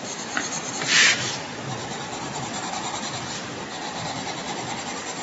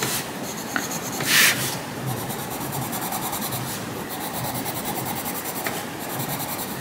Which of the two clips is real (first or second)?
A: second